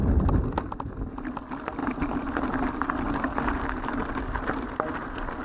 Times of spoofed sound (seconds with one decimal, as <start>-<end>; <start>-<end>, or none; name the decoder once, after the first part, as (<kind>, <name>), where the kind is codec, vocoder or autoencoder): none